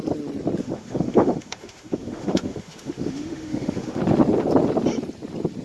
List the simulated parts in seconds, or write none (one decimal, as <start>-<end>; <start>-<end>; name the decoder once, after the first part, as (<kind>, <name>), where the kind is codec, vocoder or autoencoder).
0.6-4.0 (autoencoder, DAC-VAE)